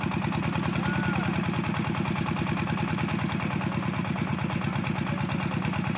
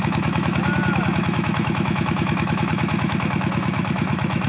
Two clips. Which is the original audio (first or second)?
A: first